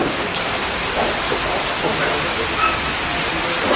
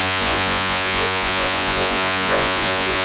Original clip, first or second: first